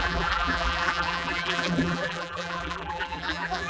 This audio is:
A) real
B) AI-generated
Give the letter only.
B